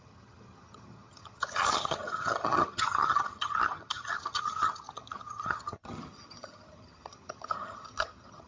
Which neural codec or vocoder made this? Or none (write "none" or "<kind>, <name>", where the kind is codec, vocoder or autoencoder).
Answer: vocoder, HiFi-GAN